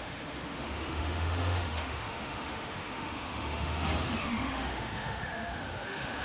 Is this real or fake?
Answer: fake